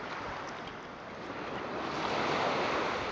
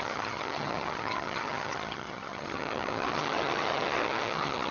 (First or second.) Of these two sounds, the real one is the first